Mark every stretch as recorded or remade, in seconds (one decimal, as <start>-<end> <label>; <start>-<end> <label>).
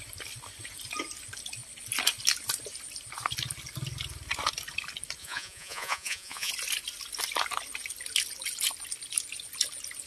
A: 0.0-5.2 recorded; 5.2-6.5 remade; 6.5-10.1 recorded